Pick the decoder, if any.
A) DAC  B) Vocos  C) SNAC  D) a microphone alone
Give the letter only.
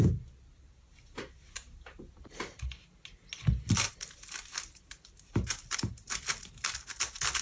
D